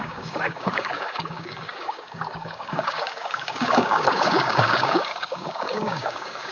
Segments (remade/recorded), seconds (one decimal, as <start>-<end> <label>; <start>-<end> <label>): 0.0-6.5 remade